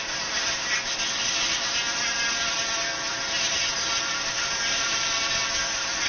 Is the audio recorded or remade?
recorded